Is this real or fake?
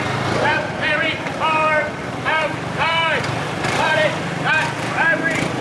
fake